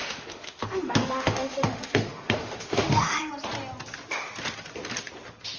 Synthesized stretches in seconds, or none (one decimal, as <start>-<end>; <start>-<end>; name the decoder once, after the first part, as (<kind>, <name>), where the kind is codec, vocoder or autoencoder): 0.0-3.3 (autoencoder, DAC-VAE)